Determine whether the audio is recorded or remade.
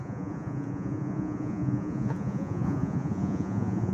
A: remade